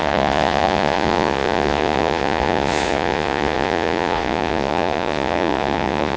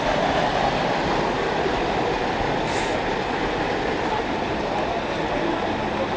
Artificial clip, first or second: first